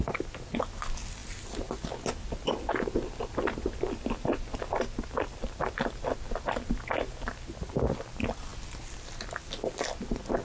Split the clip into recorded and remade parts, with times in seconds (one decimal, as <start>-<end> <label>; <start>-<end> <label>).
0.0-10.4 recorded